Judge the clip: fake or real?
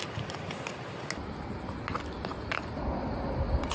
real